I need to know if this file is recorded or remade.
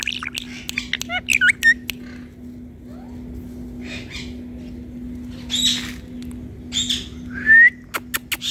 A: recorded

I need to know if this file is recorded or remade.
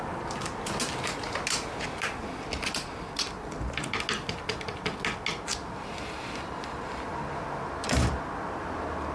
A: recorded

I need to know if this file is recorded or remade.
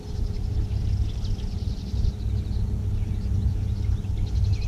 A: recorded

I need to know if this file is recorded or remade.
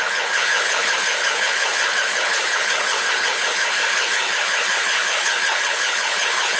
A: remade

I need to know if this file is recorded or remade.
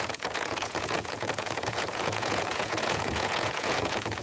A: remade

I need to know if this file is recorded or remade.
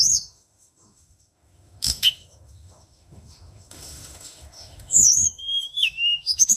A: remade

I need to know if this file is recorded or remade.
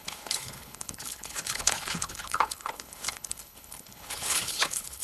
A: remade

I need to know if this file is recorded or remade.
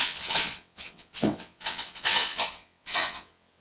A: remade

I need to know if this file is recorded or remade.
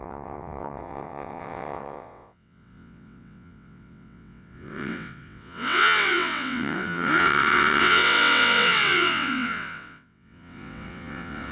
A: remade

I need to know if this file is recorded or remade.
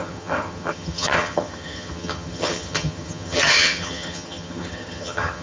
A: remade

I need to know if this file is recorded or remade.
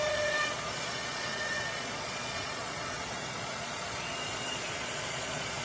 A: remade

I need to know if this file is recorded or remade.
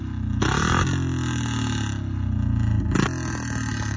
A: recorded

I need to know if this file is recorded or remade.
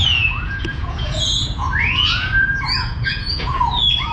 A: remade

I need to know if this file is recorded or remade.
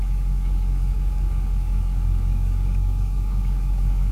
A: remade